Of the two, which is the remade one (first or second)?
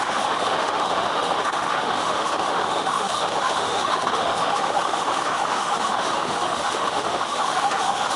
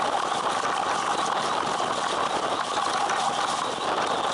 first